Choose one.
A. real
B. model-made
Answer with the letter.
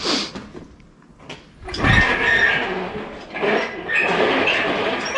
A